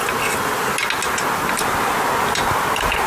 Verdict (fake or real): real